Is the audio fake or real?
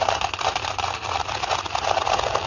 real